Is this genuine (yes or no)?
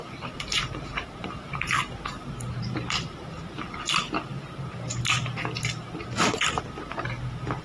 no